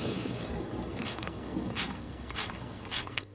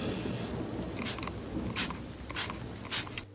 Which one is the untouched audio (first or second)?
second